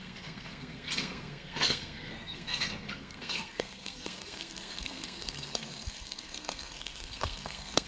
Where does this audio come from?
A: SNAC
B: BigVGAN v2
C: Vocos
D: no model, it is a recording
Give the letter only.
A